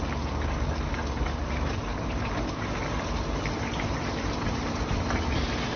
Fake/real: fake